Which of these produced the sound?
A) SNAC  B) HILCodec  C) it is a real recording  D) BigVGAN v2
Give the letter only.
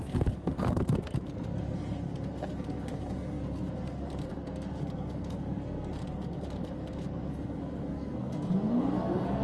A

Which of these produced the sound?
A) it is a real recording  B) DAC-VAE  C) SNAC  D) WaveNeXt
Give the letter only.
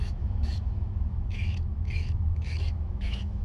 B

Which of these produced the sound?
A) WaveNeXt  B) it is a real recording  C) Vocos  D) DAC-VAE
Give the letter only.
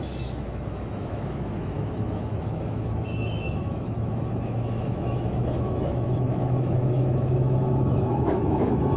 D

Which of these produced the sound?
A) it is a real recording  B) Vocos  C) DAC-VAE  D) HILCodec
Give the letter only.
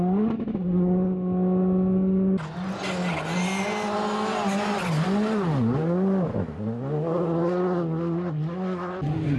A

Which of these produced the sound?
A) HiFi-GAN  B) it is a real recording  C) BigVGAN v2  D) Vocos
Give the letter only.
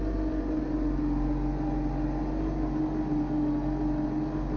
B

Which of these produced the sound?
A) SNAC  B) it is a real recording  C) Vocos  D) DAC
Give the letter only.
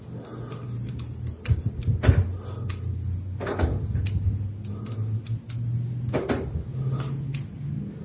B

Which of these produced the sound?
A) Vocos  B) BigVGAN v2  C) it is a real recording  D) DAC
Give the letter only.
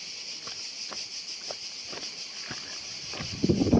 C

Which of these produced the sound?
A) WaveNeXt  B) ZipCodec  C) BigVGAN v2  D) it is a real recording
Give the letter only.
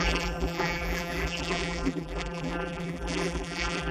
C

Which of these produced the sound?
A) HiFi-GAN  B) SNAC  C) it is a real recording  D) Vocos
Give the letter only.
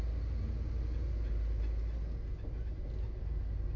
C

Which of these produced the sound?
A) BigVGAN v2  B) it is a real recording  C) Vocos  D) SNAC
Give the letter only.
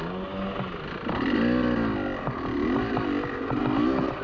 B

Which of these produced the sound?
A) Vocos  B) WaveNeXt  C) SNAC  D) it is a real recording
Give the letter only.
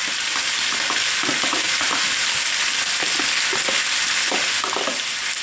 D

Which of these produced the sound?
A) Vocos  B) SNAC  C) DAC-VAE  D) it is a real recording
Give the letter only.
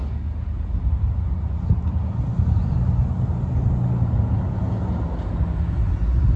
D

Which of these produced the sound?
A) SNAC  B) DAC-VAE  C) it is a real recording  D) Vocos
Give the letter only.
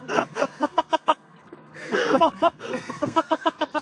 A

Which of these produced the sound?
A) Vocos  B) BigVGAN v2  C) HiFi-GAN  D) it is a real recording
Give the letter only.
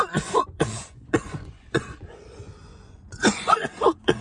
A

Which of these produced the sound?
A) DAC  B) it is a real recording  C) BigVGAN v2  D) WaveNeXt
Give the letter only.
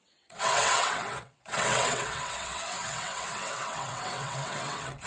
D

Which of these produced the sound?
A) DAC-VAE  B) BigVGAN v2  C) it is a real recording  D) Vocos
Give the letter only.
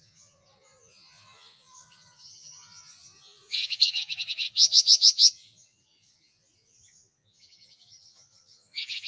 D